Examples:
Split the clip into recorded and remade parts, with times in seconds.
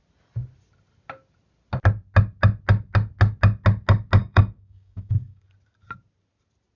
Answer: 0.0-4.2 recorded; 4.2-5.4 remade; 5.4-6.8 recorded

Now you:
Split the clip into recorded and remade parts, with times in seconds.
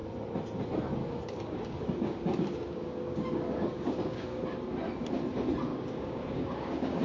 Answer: 0.0-1.0 recorded; 1.0-4.4 remade; 4.4-5.7 recorded; 5.7-7.0 remade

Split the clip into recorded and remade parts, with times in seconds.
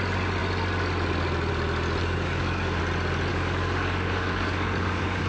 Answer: 0.0-2.0 recorded; 2.0-2.8 remade; 2.8-3.3 recorded; 3.3-5.3 remade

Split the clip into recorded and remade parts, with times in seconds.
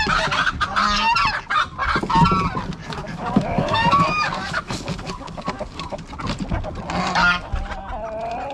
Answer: 0.0-2.8 recorded; 2.8-6.0 remade; 6.0-8.5 recorded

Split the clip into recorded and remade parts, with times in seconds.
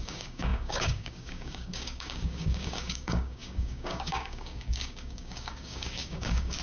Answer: 0.0-6.6 remade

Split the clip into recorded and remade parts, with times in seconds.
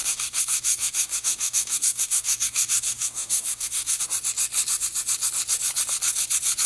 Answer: 0.0-4.0 remade; 4.0-6.7 recorded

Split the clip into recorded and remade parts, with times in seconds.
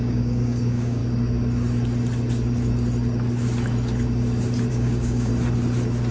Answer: 0.0-1.0 remade; 1.0-4.7 recorded; 4.7-5.3 remade; 5.3-6.1 recorded